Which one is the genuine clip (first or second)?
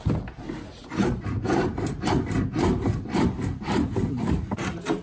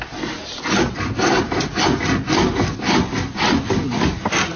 second